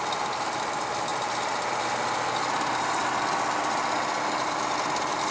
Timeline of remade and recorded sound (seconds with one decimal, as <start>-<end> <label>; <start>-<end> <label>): 0.0-5.3 recorded